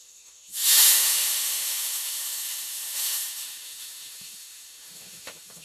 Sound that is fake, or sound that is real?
fake